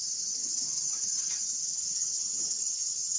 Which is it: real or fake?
fake